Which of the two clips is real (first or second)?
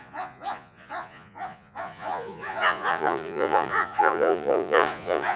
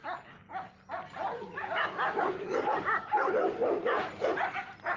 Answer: second